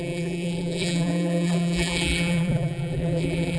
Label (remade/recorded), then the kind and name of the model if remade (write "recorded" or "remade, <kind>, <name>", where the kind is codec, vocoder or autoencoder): remade, vocoder, BigVGAN v2